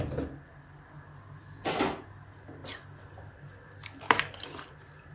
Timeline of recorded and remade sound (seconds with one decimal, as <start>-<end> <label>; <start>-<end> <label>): 0.0-5.1 recorded